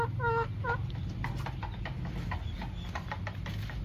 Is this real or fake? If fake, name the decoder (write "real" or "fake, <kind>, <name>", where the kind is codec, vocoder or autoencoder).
real